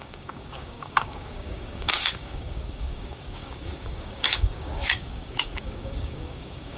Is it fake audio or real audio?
fake